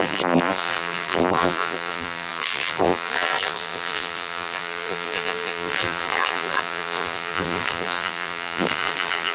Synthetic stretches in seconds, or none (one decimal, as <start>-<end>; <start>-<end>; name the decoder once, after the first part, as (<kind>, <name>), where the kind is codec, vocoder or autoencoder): 0.0-9.3 (vocoder, BigVGAN v2)